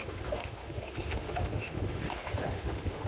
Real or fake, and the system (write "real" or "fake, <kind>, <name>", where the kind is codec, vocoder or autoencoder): fake, autoencoder, DAC-VAE